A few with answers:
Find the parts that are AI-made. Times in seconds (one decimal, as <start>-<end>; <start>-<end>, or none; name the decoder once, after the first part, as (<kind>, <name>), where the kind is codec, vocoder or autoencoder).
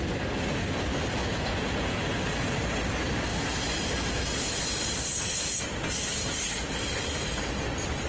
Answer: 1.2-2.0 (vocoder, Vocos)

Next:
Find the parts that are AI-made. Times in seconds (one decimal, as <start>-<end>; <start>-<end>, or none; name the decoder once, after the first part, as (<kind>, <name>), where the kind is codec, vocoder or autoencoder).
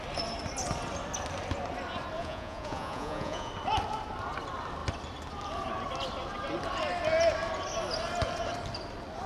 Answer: 2.2-3.5 (vocoder, Vocos)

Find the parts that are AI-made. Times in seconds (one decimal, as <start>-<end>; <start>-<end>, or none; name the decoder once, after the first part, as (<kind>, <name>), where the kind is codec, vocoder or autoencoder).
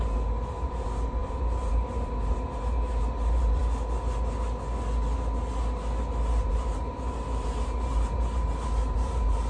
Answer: 0.0-3.6 (vocoder, BigVGAN v2); 6.4-9.5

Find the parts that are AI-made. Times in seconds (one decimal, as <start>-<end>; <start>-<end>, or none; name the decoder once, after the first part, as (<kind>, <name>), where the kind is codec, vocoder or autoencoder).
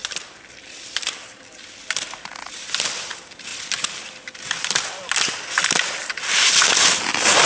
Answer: 0.0-1.4 (vocoder, BigVGAN v2); 6.0-7.1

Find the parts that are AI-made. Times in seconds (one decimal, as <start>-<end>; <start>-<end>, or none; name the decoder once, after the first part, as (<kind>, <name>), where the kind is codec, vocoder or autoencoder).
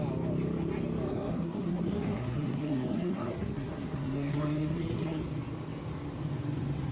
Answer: 1.1-5.2 (codec, SNAC)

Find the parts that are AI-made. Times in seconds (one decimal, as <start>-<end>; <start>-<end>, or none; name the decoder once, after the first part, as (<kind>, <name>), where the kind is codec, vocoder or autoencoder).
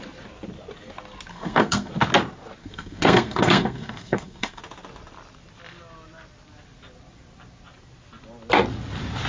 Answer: 1.3-1.9 (codec, SNAC); 2.6-4.6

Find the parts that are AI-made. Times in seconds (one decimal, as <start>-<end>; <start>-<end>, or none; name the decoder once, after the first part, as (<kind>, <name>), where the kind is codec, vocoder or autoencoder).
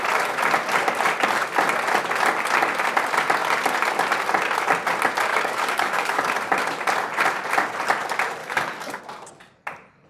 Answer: 5.3-6.3 (codec, DAC); 8.4-9.0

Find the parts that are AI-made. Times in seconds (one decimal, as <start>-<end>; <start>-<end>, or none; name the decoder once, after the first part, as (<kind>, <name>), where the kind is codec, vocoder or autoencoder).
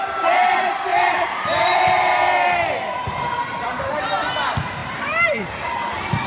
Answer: 0.9-1.8 (vocoder, BigVGAN v2); 4.8-6.3